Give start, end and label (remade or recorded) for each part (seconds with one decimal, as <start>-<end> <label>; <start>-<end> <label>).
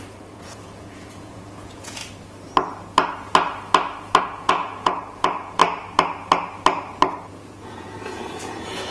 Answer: 0.0-2.0 remade; 2.0-4.2 recorded; 4.2-5.6 remade; 5.6-7.3 recorded; 7.3-8.9 remade